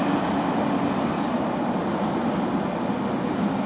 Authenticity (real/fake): real